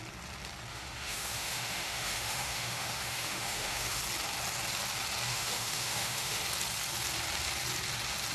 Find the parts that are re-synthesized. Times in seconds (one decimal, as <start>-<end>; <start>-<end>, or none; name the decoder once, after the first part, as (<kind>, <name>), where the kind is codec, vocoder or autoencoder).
0.7-4.0 (autoencoder, DAC-VAE); 5.3-6.4